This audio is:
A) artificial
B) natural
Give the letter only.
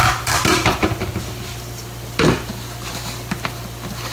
B